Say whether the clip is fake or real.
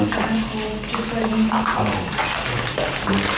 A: real